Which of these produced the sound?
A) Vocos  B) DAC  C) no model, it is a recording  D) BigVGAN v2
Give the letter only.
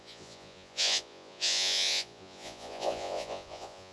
A